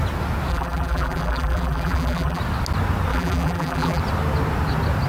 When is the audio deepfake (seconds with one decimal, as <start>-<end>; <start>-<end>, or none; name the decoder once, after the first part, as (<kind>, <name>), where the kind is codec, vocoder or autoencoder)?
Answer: 0.5-2.4 (vocoder, BigVGAN v2); 3.1-4.0